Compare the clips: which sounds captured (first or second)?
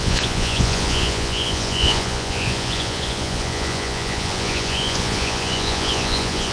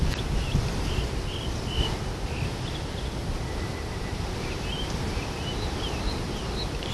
second